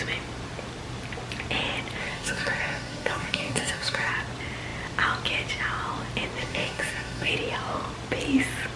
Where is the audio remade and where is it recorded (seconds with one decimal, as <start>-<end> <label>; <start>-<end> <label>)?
0.0-2.0 recorded; 2.0-4.1 remade; 4.1-6.4 recorded; 6.4-7.3 remade; 7.3-8.8 recorded